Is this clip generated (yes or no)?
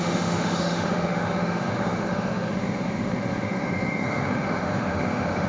yes